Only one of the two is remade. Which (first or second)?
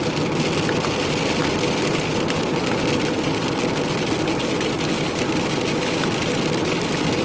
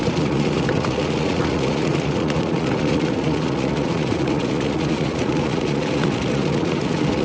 second